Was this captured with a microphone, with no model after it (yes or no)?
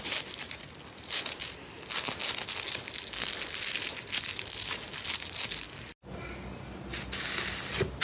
yes